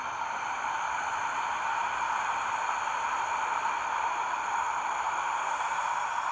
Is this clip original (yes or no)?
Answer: yes